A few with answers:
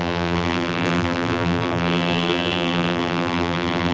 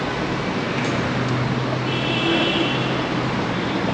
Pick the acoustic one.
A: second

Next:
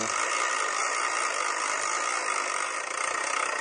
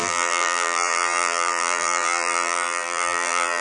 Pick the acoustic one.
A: first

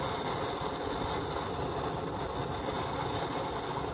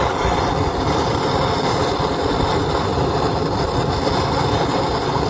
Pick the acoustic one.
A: first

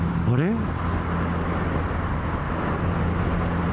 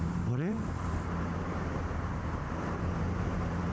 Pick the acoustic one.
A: first